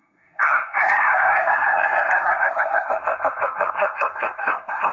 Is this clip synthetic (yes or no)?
yes